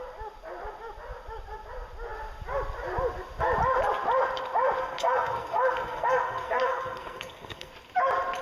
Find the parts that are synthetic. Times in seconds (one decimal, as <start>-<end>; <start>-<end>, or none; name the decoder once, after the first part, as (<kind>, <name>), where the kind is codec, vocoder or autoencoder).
4.8-7.7 (codec, SNAC)